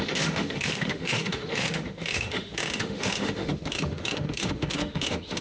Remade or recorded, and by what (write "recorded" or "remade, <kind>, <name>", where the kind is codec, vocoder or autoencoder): remade, autoencoder, DAC-VAE